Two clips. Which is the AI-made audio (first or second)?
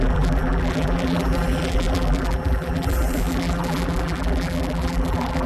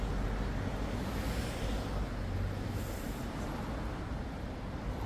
first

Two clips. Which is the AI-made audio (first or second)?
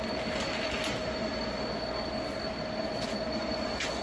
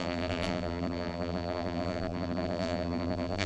second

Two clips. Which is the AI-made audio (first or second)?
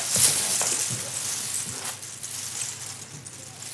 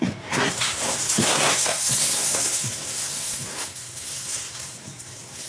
second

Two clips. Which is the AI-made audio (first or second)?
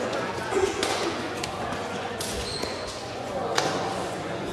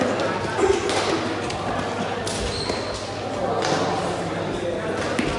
first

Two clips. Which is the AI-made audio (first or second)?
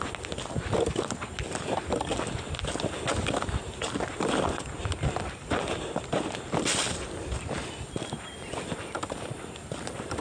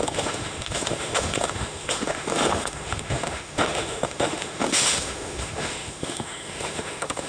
second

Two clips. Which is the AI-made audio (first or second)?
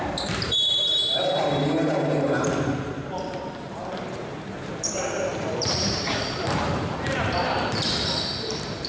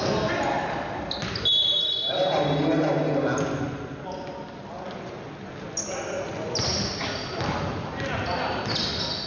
first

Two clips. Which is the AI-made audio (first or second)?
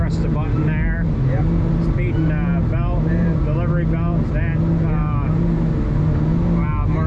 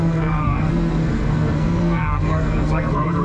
second